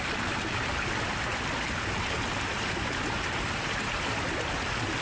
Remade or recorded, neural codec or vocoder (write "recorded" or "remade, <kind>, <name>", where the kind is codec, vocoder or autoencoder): recorded